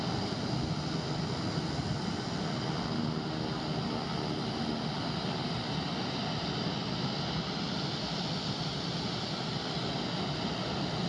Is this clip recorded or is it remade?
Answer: recorded